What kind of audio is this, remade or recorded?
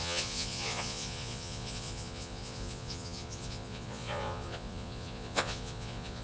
remade